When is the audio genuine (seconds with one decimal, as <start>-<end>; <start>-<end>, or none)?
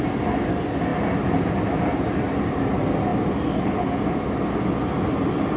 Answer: 0.0-5.6